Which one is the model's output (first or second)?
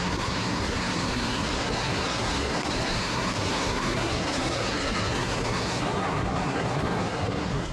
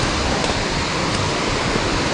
first